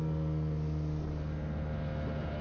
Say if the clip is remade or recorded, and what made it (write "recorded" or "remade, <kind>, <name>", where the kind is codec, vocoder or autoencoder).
recorded